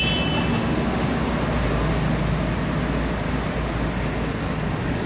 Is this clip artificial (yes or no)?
no